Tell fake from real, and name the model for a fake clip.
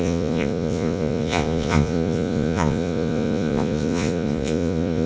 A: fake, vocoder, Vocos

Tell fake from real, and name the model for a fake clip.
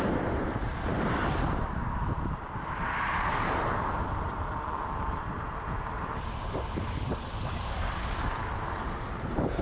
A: fake, vocoder, BigVGAN v2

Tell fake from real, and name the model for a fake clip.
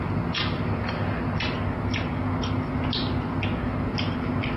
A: real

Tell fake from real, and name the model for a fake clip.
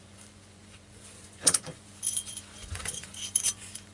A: fake, vocoder, Vocos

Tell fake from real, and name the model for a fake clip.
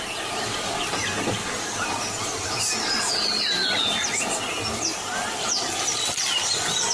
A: real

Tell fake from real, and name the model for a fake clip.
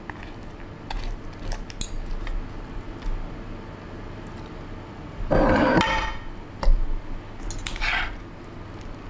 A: real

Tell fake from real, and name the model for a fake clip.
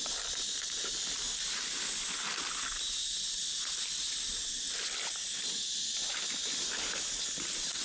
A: real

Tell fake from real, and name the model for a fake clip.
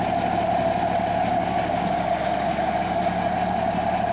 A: real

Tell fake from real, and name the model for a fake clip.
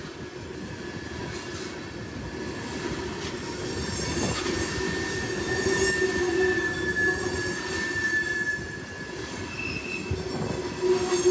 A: real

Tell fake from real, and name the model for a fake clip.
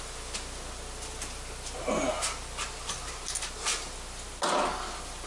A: real